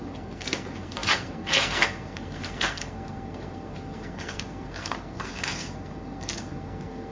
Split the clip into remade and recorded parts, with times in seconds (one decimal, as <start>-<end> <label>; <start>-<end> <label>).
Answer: 0.0-7.1 remade